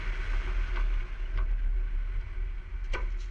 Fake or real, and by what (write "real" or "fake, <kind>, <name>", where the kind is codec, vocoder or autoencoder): real